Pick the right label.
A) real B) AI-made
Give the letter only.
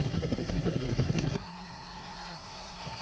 B